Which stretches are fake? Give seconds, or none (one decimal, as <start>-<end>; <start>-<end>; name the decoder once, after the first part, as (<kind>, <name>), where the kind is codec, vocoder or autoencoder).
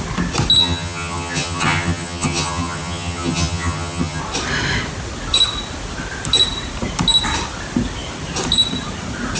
0.6-4.2 (vocoder, HiFi-GAN)